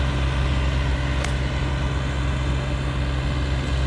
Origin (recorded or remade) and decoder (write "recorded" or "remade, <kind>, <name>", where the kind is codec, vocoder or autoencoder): recorded